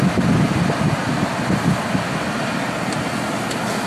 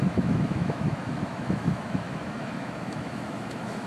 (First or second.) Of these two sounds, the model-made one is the second